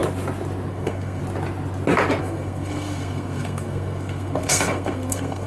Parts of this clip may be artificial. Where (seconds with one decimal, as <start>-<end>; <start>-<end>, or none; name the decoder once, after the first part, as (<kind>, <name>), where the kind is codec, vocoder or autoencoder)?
0.7-1.2 (codec, SNAC); 2.2-5.5